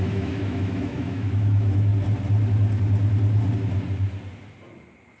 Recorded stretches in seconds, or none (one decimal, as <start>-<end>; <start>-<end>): 1.9-5.2